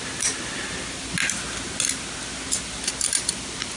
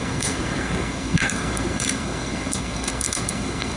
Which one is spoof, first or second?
second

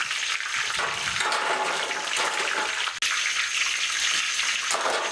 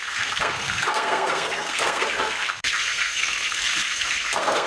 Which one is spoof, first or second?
second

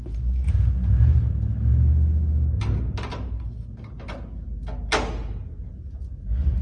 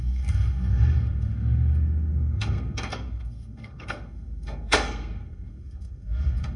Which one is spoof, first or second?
second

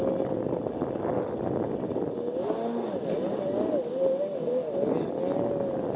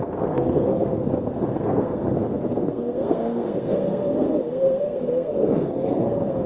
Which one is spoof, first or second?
second